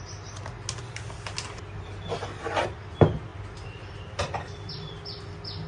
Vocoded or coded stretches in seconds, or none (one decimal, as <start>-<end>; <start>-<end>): 3.3-4.7